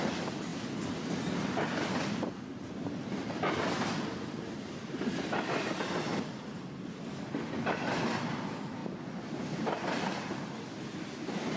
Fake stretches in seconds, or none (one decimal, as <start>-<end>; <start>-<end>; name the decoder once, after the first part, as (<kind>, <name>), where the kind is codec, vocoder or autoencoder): none

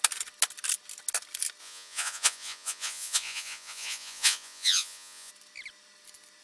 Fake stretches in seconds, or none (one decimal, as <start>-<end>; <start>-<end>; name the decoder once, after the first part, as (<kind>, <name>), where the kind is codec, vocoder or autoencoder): 1.6-5.3 (vocoder, Vocos)

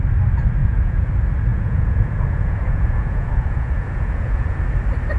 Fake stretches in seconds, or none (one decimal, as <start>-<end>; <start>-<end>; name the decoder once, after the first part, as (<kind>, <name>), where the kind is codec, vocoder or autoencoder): 0.6-1.1 (vocoder, Vocos); 1.5-4.6